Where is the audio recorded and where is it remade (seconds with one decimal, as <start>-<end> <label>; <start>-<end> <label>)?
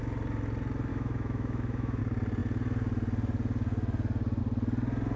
0.0-0.9 recorded; 0.9-2.0 remade; 2.0-5.2 recorded